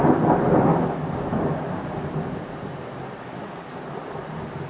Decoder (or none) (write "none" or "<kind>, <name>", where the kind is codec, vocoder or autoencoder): none